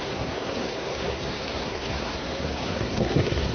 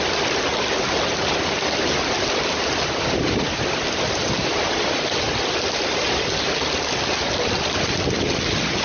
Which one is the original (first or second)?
second